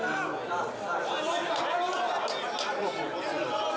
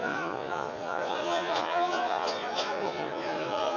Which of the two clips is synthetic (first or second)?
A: second